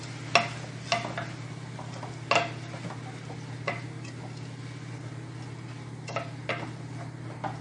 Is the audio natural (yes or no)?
yes